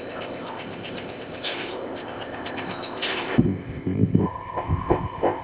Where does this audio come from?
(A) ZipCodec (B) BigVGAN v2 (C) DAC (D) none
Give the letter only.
A